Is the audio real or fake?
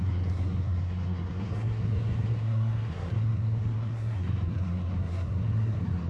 fake